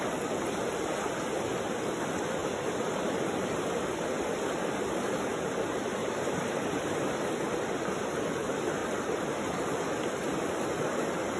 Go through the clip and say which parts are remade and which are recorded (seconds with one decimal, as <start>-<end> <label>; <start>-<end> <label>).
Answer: 0.0-6.0 recorded; 6.0-6.8 remade; 6.8-11.4 recorded

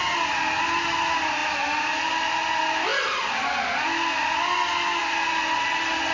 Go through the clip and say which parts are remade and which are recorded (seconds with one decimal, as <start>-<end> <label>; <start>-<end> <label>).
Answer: 0.0-6.1 recorded

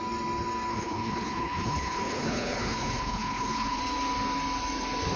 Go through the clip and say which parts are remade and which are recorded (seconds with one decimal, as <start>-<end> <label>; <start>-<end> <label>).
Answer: 0.0-0.7 recorded; 0.7-3.8 remade; 3.8-5.2 recorded

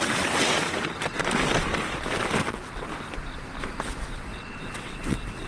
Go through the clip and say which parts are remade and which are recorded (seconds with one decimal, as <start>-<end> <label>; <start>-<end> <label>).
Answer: 0.0-0.6 remade; 0.6-2.5 recorded; 2.5-2.9 remade; 2.9-4.1 recorded; 4.1-5.5 remade

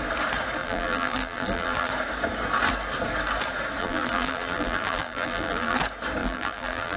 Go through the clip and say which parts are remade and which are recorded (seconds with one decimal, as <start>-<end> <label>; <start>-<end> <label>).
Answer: 0.0-0.6 recorded; 0.6-1.9 remade; 1.9-3.8 recorded; 3.8-5.8 remade; 5.8-6.2 recorded; 6.2-7.0 remade

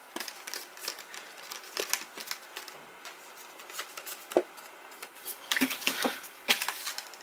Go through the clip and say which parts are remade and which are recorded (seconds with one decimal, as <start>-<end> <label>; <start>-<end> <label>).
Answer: 0.0-5.2 recorded; 5.2-6.5 remade; 6.5-7.2 recorded

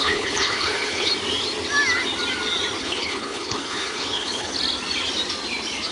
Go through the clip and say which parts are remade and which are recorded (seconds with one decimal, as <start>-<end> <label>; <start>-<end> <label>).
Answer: 0.0-1.1 remade; 1.1-2.8 recorded; 2.8-4.5 remade; 4.5-5.9 recorded